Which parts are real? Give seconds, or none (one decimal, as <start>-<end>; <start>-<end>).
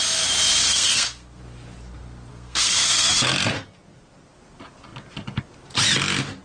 0.0-0.7; 1.4-2.3; 3.1-6.4